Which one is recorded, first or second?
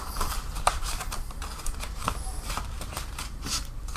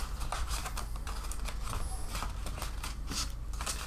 second